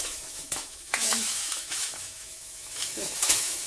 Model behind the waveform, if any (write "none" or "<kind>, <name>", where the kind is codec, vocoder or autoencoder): autoencoder, DAC-VAE